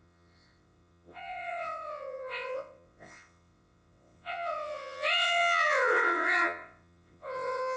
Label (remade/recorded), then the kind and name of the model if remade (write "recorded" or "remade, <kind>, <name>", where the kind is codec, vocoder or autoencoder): remade, vocoder, WaveNeXt